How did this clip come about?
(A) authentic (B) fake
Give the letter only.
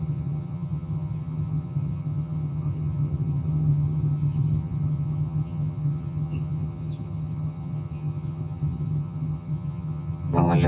B